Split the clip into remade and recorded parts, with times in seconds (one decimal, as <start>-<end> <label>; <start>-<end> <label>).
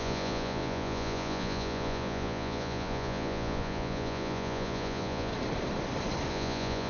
0.0-5.3 remade; 5.3-6.3 recorded; 6.3-6.9 remade